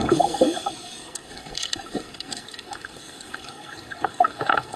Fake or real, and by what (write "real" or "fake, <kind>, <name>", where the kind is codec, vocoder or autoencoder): fake, codec, SNAC